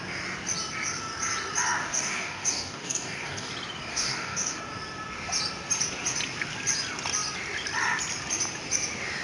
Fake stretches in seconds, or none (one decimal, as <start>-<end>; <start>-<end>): 1.8-3.5; 3.9-4.6